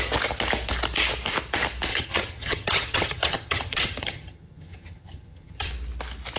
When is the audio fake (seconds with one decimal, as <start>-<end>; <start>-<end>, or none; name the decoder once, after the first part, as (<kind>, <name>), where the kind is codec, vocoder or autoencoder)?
1.9-5.7 (vocoder, HiFi-GAN)